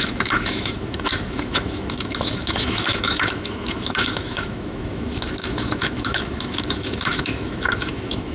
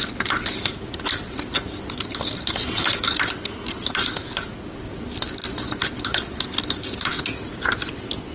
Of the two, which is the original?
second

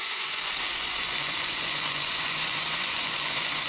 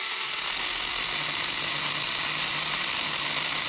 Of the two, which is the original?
second